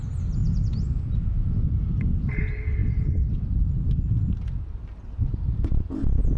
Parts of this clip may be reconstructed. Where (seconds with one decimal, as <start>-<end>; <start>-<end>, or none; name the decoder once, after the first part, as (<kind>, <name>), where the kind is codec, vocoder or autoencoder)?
0.4-2.3 (vocoder, Vocos)